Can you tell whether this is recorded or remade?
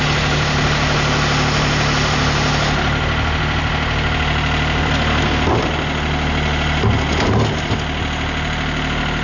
recorded